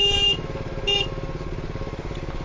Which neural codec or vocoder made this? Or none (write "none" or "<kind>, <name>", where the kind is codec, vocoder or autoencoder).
none